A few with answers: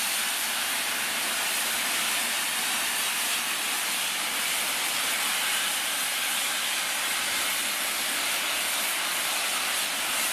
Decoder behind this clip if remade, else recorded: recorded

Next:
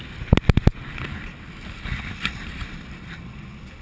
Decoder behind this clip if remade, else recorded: recorded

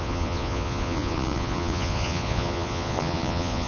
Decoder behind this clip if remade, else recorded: remade, vocoder, Vocos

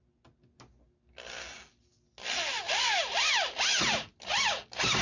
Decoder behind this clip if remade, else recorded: recorded